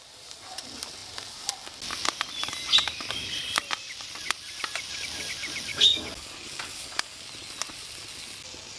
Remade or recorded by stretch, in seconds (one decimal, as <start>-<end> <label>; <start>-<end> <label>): 0.0-5.7 recorded; 5.7-7.2 remade; 7.2-8.8 recorded

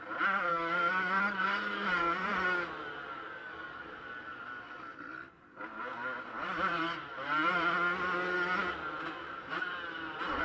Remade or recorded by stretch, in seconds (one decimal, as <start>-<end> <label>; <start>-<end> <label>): 0.0-0.5 recorded; 0.5-1.2 remade; 1.2-3.4 recorded; 3.4-3.9 remade; 3.9-10.4 recorded